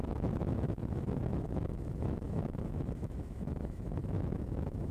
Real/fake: fake